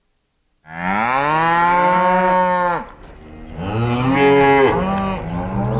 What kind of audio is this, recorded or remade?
recorded